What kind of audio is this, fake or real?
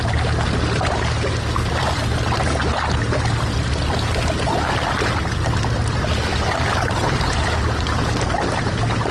real